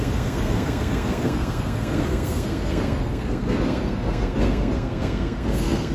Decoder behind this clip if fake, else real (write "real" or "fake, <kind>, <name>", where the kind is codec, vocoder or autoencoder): fake, codec, SNAC